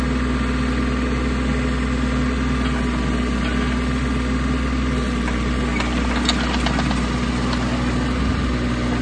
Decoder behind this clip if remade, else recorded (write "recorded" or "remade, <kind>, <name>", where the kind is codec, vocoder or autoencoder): recorded